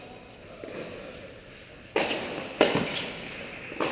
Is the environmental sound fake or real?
real